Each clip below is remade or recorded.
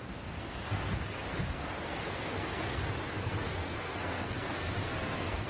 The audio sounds remade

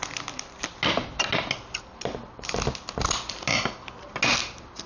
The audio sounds recorded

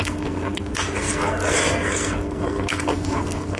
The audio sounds remade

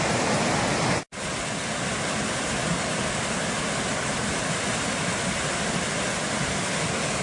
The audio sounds recorded